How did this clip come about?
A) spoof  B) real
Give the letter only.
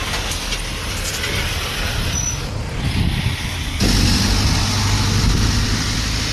B